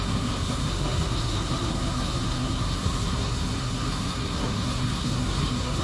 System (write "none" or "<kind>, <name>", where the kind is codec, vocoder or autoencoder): codec, SNAC